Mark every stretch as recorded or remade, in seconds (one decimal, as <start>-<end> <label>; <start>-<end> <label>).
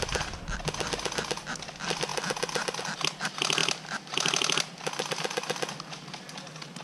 0.0-6.8 recorded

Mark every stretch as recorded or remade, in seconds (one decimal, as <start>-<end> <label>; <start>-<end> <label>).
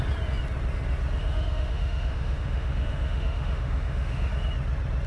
0.0-1.2 recorded; 1.2-4.3 remade; 4.3-5.1 recorded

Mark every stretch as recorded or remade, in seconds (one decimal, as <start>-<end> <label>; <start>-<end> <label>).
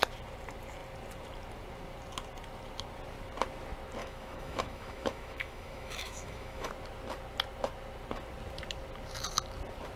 0.0-4.0 recorded; 4.0-6.7 remade; 6.7-10.0 recorded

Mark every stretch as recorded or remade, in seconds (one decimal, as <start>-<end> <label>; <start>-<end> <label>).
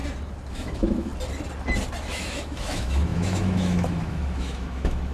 0.0-0.5 recorded; 0.5-1.1 remade; 1.1-2.0 recorded; 2.0-5.1 remade